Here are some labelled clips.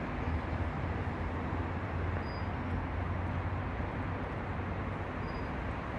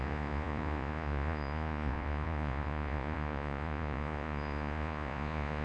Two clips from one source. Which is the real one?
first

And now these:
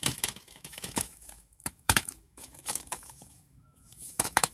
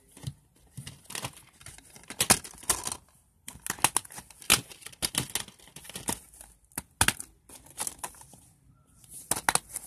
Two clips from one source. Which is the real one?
second